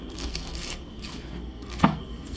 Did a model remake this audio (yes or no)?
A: yes